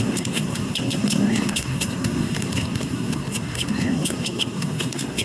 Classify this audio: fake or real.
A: fake